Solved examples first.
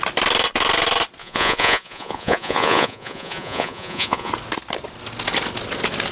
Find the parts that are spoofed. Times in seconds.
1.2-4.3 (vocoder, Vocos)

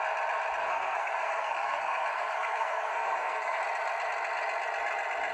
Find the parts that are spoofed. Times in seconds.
0.6-3.6 (codec, SNAC)

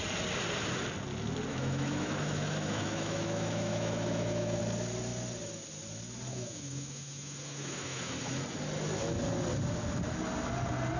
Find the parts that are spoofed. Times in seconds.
1.5-4.6 (autoencoder, DAC-VAE); 6.3-8.1

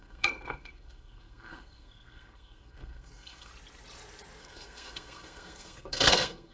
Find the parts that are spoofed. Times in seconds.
0.0-3.5 (codec, SNAC); 4.4-6.5

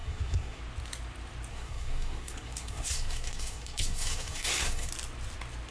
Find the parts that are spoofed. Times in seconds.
0.0-0.6 (codec, SNAC); 1.5-4.9